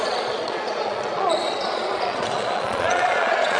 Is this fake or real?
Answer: fake